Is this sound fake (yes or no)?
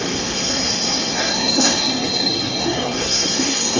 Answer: yes